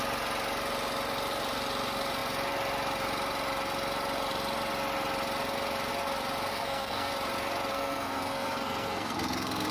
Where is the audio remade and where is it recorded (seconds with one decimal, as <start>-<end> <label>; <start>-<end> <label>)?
0.0-6.5 recorded; 6.5-7.1 remade; 7.1-7.7 recorded; 7.7-9.7 remade